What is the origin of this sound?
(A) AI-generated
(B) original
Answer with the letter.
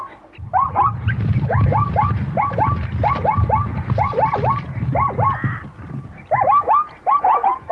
A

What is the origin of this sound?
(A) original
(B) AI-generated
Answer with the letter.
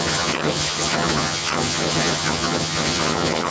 B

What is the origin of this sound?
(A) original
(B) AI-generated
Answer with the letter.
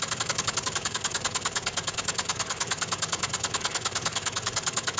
B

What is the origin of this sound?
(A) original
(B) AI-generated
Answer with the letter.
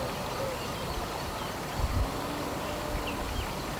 A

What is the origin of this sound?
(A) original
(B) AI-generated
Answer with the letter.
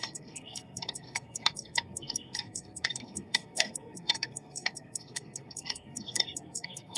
B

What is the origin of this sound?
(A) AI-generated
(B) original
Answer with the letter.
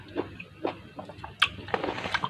B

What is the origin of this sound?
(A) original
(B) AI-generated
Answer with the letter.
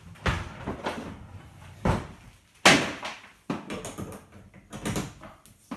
A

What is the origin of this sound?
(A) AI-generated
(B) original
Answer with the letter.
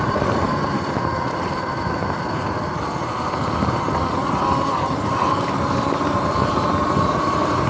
A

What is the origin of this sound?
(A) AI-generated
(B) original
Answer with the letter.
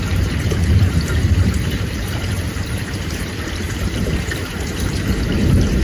A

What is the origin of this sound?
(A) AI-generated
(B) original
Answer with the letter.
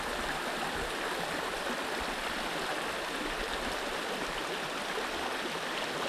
B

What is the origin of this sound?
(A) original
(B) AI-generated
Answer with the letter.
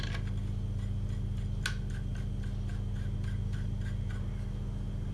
A